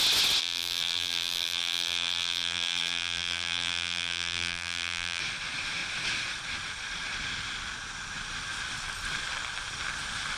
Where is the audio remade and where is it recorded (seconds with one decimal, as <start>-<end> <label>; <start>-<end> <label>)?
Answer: 0.0-0.4 recorded; 0.4-5.2 remade; 5.2-10.4 recorded